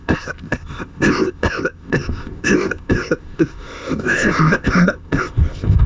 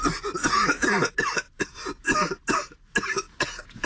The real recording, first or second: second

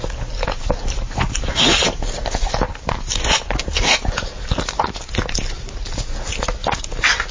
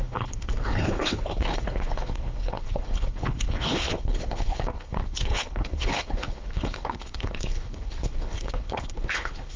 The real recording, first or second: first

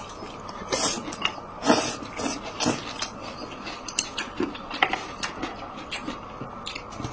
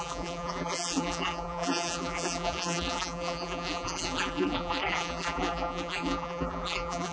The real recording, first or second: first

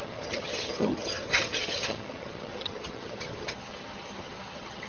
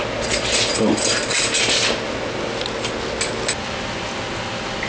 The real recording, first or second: second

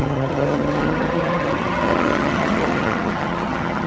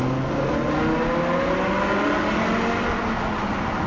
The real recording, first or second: second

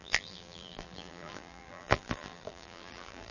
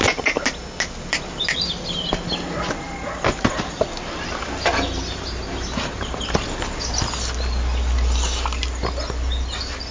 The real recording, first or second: second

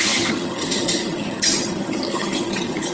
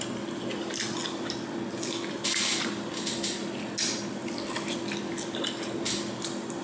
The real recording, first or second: second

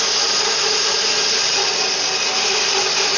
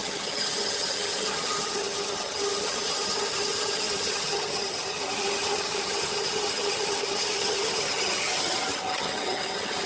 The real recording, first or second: first